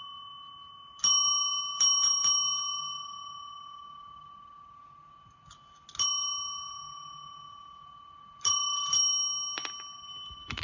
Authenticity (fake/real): real